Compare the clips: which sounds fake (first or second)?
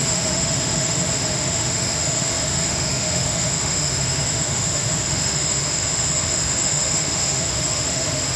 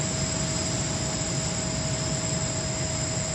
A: first